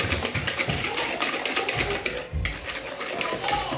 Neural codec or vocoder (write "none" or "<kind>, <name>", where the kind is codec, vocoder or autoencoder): none